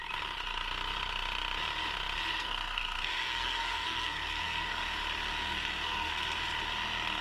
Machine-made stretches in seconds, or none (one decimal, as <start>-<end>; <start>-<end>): 2.3-4.8; 5.4-6.4